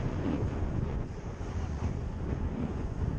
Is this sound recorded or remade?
remade